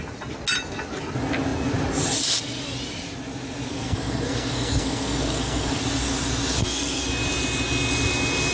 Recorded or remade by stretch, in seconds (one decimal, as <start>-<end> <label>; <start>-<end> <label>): 0.0-3.7 recorded; 3.7-5.8 remade; 5.8-6.6 recorded; 6.6-7.1 remade; 7.1-8.5 recorded